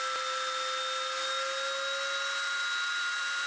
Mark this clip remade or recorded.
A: recorded